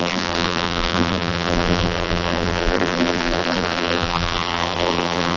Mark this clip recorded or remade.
remade